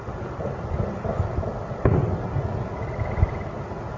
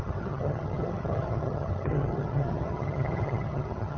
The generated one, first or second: second